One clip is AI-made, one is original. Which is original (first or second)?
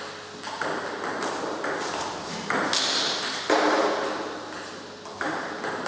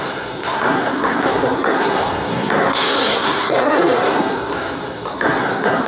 first